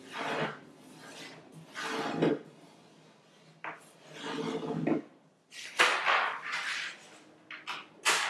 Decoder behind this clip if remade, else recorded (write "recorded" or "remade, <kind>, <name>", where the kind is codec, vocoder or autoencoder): recorded